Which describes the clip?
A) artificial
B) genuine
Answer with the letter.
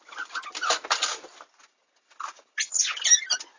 B